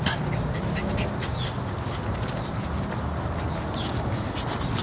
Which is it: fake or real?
real